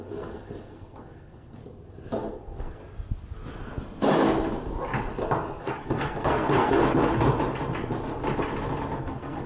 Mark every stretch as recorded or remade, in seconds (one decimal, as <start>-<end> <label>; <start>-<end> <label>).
0.0-1.6 remade; 1.6-2.3 recorded; 2.3-2.8 remade; 2.8-5.6 recorded; 5.6-6.8 remade; 6.8-9.0 recorded; 9.0-9.5 remade